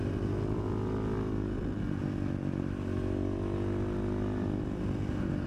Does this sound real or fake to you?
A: real